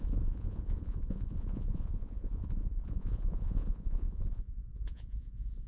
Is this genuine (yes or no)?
no